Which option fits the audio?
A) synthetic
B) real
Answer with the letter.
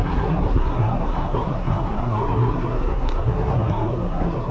A